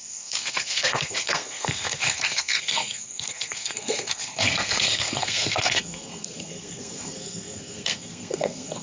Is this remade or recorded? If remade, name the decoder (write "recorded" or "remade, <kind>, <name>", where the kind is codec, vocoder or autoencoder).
remade, codec, SNAC